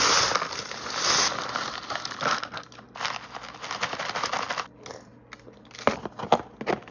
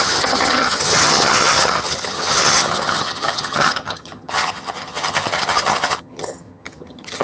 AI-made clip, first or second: second